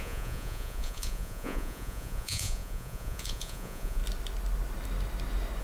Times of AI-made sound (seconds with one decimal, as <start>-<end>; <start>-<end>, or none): 0.0-4.0